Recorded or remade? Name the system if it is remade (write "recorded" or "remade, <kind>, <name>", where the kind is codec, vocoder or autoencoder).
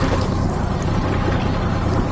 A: recorded